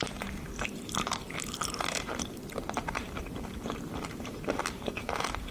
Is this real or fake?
fake